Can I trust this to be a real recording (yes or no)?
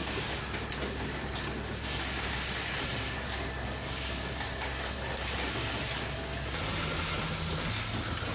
yes